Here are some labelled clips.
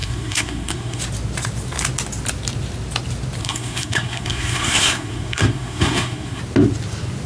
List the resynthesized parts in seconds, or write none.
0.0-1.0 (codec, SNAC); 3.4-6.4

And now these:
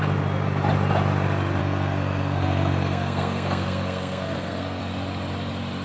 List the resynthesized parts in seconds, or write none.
1.6-4.8 (codec, SNAC)

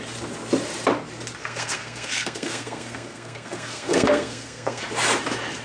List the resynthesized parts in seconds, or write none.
1.4-4.8 (codec, SNAC)